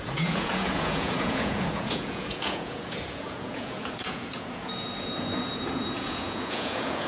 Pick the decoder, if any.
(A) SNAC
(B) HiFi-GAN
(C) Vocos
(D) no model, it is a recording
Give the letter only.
C